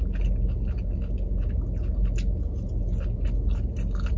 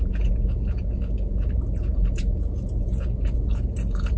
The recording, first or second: first